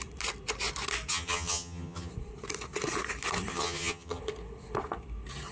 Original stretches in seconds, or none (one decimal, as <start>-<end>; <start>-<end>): 0.0-1.1; 2.1-3.5; 4.2-5.5